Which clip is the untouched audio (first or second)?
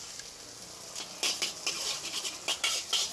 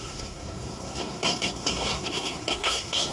first